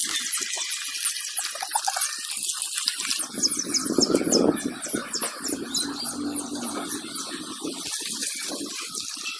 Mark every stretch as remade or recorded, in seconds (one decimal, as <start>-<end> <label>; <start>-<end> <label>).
0.0-8.2 recorded; 8.2-8.7 remade; 8.7-9.4 recorded